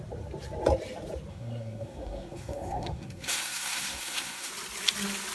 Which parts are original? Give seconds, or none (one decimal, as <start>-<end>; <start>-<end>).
0.0-1.3; 4.5-5.3